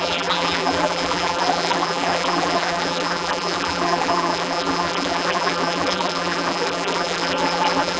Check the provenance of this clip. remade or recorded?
remade